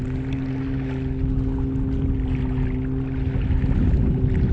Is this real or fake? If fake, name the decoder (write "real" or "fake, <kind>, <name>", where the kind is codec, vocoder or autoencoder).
real